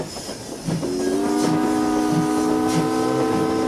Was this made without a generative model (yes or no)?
yes